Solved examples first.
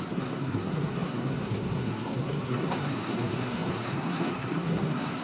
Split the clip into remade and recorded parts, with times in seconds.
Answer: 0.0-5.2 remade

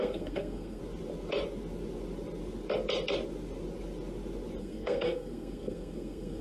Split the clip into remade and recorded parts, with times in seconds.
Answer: 0.0-0.8 remade; 0.8-4.6 recorded; 4.6-6.4 remade

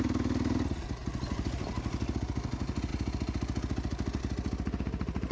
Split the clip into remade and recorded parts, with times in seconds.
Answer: 0.0-5.3 recorded